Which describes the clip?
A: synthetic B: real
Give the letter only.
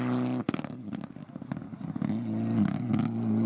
B